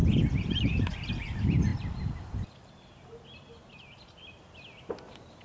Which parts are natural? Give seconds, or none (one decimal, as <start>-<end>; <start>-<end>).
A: 1.1-1.7; 4.4-5.4